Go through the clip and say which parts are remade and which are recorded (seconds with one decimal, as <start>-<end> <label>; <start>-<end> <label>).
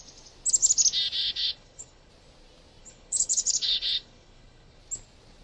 0.0-1.2 recorded; 1.2-2.1 remade; 2.1-2.8 recorded; 2.8-4.8 remade; 4.8-5.4 recorded